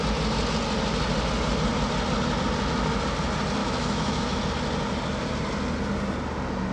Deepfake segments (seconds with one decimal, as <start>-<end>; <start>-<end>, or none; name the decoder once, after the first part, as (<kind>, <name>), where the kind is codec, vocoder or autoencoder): 3.6-4.4 (autoencoder, DAC-VAE)